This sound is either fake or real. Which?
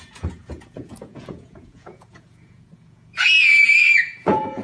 fake